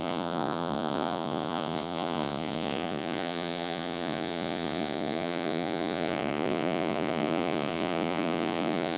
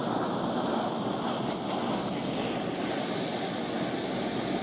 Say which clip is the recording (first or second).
second